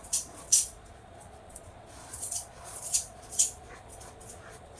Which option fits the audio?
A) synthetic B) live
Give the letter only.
A